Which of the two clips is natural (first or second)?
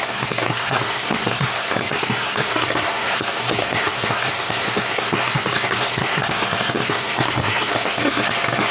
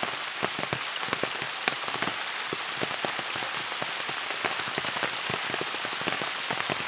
second